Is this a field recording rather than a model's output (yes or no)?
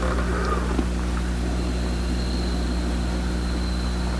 yes